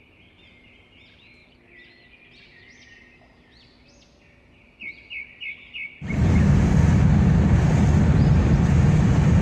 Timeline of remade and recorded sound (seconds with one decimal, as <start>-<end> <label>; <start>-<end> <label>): 0.0-9.4 recorded